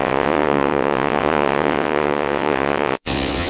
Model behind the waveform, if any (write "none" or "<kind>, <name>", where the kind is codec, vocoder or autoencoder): vocoder, WaveNeXt